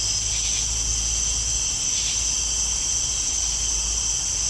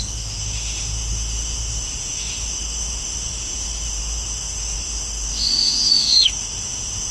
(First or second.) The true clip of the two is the first